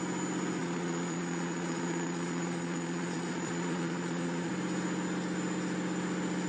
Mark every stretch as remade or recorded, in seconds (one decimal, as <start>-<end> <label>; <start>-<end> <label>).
0.0-0.6 recorded; 0.6-4.5 remade; 4.5-6.5 recorded